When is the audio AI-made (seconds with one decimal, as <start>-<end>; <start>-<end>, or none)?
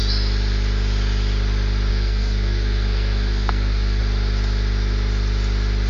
1.9-4.0